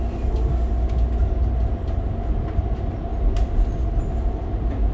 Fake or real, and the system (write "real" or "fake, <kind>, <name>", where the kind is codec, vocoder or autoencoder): real